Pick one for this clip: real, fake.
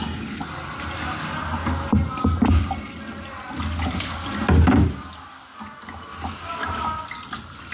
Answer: real